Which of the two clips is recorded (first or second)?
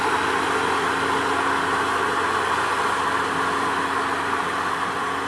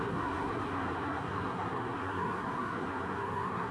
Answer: first